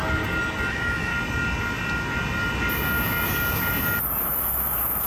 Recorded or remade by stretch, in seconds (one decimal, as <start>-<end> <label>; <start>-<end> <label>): 0.0-0.7 recorded; 0.7-1.1 remade; 1.1-4.2 recorded; 4.2-5.1 remade